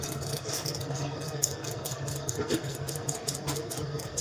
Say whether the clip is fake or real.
fake